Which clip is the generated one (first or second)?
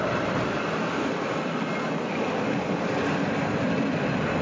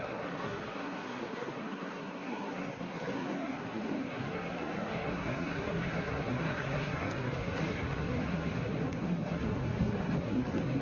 second